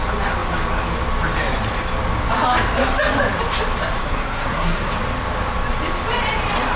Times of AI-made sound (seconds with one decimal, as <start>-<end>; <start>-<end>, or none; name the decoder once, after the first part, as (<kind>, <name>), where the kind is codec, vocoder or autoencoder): 4.0-4.9 (codec, SNAC)